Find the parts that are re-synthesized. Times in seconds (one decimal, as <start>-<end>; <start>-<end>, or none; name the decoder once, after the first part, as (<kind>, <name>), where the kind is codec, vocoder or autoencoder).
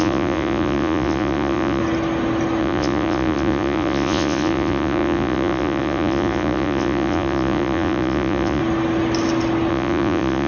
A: 0.0-1.8 (vocoder, Vocos); 2.6-8.6; 9.7-10.5